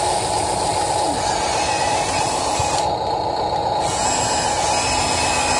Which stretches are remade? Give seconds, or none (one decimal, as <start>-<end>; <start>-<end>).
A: none